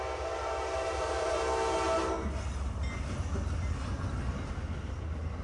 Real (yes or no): yes